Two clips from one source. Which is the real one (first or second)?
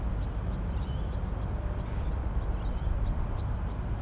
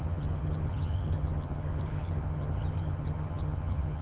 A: first